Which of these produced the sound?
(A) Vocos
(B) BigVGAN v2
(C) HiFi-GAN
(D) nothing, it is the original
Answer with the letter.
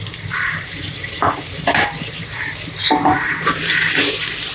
B